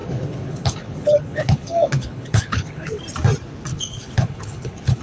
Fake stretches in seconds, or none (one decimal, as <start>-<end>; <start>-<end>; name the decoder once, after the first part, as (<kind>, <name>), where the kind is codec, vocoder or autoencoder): 0.0-3.0 (codec, HILCodec); 3.7-5.0